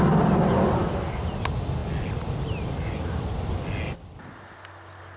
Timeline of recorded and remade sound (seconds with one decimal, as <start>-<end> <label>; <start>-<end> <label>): 0.0-5.2 recorded